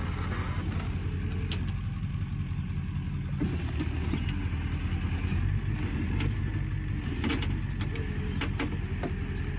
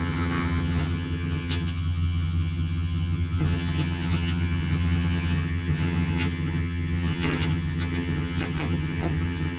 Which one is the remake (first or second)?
second